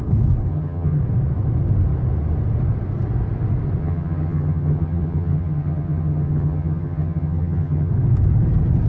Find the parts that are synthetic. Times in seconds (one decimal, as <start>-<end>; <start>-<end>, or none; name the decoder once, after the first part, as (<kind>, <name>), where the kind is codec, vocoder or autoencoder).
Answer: 0.5-1.0 (vocoder, HiFi-GAN); 3.8-7.9